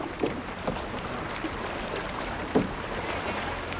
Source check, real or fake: real